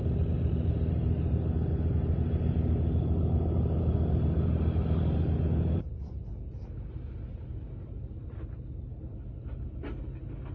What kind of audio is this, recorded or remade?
recorded